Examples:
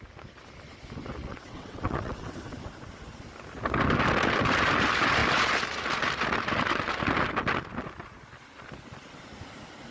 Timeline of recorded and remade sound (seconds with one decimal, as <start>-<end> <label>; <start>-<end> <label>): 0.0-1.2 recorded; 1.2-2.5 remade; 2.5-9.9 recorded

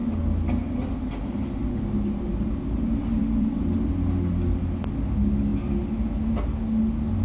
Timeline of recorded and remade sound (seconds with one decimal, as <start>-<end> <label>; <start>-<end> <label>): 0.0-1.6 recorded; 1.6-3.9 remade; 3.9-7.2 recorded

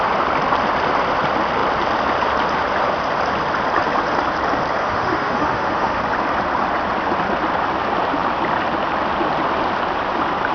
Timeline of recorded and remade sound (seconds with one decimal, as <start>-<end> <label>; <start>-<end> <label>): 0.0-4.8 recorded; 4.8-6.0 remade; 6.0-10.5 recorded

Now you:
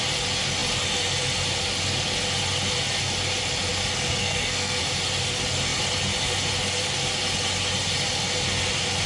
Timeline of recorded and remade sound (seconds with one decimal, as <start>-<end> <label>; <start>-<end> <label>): 0.0-4.2 recorded; 4.2-4.8 remade; 4.8-9.1 recorded